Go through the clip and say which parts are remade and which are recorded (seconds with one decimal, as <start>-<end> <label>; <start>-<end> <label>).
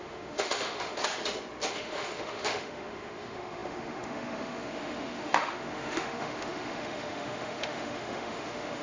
0.0-1.0 remade; 1.0-1.7 recorded; 1.7-8.8 remade